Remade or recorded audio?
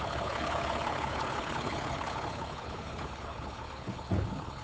remade